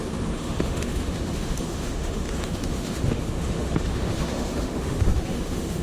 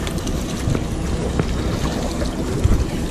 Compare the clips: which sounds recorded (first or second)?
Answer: second